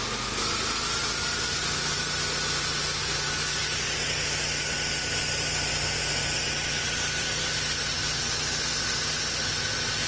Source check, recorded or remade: recorded